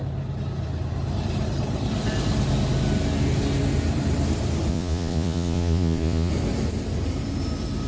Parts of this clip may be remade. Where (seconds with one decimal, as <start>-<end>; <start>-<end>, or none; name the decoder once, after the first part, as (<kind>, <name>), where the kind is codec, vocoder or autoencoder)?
4.7-6.3 (vocoder, Vocos)

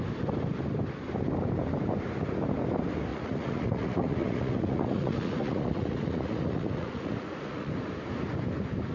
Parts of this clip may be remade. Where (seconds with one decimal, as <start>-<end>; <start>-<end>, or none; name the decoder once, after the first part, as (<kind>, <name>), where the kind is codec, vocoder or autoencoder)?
3.1-7.7 (vocoder, Vocos)

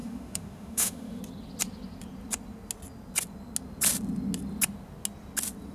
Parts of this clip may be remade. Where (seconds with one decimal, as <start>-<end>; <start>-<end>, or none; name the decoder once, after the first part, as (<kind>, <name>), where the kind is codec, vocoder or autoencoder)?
0.0-1.2 (autoencoder, DAC-VAE)

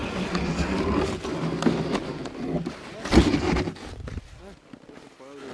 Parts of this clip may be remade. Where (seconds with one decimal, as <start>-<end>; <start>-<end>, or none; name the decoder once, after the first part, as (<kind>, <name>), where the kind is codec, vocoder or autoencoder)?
none

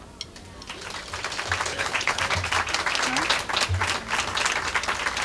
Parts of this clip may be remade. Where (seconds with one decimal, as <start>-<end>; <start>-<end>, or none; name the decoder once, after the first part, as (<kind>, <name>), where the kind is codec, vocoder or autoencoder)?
1.7-2.2 (codec, HILCodec)

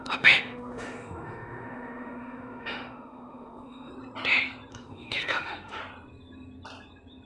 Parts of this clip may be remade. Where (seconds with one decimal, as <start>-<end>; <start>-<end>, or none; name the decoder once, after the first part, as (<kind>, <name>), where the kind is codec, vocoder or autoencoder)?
0.0-3.9 (autoencoder, DAC-VAE); 4.7-5.8